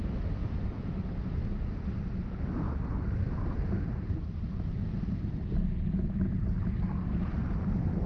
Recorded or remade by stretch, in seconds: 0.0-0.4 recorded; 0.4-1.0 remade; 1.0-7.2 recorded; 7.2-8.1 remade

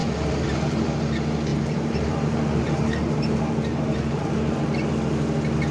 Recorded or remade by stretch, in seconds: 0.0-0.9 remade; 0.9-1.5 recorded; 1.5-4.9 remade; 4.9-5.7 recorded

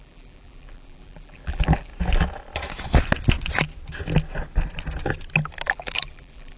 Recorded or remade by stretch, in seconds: 0.0-1.9 remade; 1.9-5.7 recorded; 5.7-6.6 remade